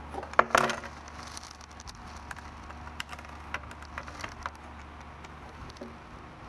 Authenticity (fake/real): real